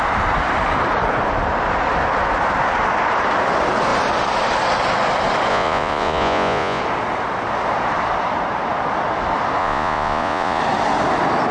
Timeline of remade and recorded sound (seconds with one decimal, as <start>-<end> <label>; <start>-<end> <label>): 0.0-5.5 recorded; 5.5-6.8 remade; 6.8-9.6 recorded; 9.6-10.6 remade; 10.6-11.5 recorded